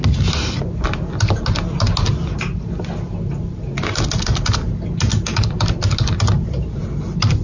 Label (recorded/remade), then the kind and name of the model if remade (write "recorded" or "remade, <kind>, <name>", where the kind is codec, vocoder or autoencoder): recorded